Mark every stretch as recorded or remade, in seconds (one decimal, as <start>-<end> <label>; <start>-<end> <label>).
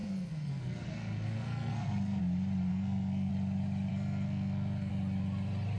0.0-2.2 remade; 2.2-2.7 recorded; 2.7-3.3 remade; 3.3-3.9 recorded; 3.9-4.9 remade; 4.9-5.8 recorded